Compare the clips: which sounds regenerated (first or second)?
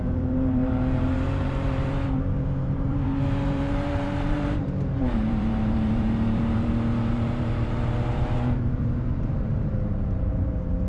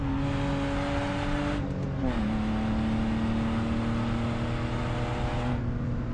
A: first